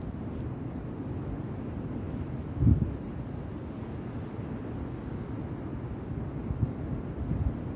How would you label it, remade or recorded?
recorded